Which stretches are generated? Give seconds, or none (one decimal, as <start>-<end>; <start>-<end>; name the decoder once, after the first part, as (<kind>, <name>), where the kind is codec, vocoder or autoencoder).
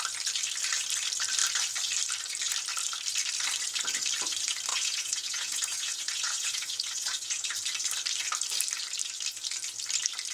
4.7-7.5 (vocoder, Vocos)